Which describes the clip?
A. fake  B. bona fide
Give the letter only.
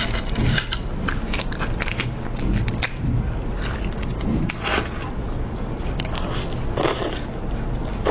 B